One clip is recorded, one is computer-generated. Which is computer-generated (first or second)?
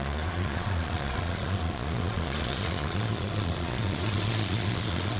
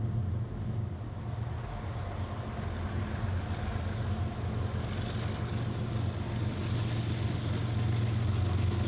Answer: first